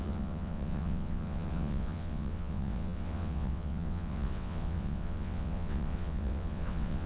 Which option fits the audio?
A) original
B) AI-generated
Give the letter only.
B